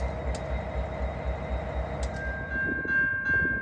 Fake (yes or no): no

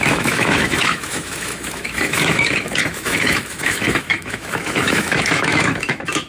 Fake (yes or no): yes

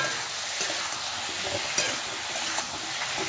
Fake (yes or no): no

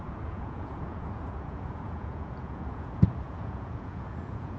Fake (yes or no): yes